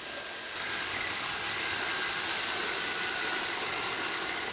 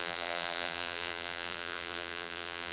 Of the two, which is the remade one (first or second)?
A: second